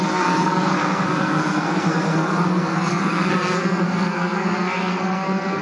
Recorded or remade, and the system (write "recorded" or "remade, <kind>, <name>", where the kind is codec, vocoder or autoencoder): remade, codec, SNAC